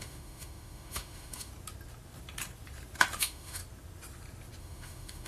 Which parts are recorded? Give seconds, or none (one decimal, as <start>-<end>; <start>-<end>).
1.5-3.2; 3.6-4.6

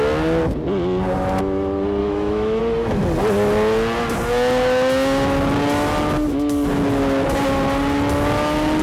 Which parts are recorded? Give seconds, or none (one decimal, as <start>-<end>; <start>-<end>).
0.0-2.0; 2.6-8.8

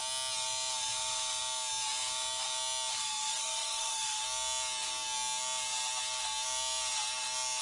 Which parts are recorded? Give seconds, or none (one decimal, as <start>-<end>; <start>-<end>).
0.0-2.9; 4.2-7.6

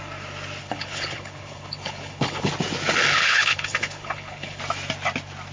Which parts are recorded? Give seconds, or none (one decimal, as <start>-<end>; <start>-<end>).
0.0-0.6; 2.5-3.1; 4.6-5.5

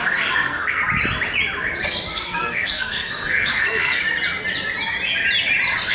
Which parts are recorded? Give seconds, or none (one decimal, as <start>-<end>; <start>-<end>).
0.8-2.1; 4.0-5.9